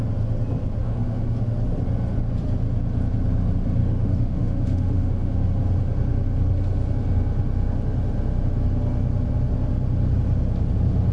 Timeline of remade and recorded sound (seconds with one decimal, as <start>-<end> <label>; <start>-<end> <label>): 0.0-0.8 recorded; 0.8-1.4 remade; 1.4-3.8 recorded; 3.8-5.5 remade; 5.5-11.1 recorded